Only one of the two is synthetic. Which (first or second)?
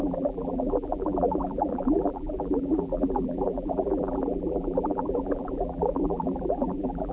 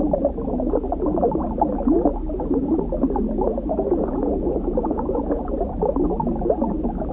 first